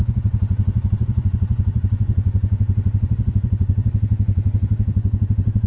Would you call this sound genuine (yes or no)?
no